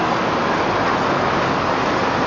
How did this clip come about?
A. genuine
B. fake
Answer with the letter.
A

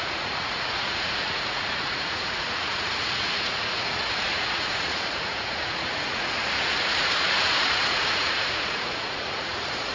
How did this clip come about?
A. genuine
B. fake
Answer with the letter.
B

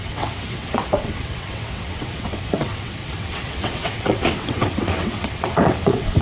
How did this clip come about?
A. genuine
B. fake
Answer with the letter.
B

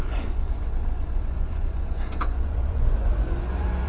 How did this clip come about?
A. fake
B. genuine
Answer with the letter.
A